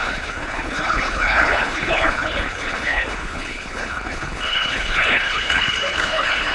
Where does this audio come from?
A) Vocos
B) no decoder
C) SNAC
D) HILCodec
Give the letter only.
D